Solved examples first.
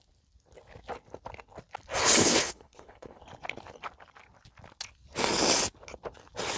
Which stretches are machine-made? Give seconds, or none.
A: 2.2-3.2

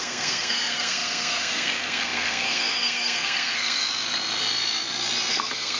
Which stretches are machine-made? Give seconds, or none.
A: 0.0-3.8; 5.3-5.8

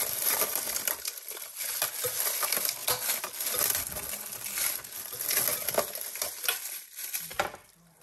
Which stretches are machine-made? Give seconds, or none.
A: none